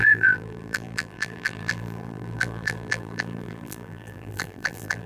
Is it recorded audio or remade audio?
remade